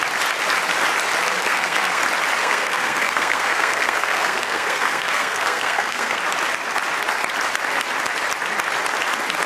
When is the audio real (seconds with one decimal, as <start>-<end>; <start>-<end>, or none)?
0.0-1.4; 2.0-2.4; 6.2-9.5